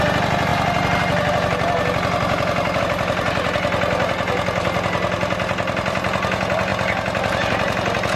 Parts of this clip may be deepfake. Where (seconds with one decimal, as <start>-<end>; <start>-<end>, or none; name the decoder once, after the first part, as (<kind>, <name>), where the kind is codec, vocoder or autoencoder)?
none